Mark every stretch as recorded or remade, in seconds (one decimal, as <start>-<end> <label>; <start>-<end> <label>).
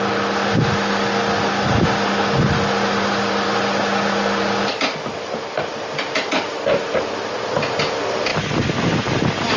0.0-9.6 recorded